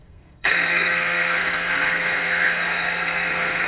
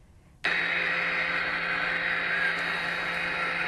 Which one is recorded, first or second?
second